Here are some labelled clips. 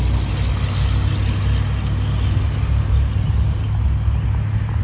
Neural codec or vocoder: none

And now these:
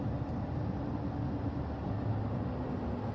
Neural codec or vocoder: none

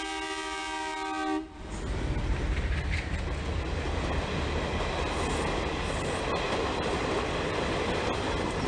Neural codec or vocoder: none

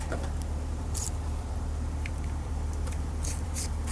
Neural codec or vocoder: vocoder, BigVGAN v2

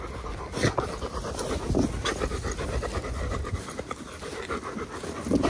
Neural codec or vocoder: none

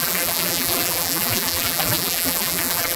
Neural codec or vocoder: vocoder, BigVGAN v2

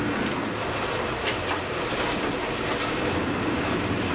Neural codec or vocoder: none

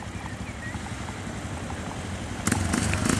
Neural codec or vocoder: none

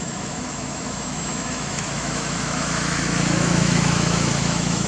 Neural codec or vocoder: autoencoder, DAC-VAE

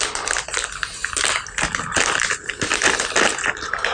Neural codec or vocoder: none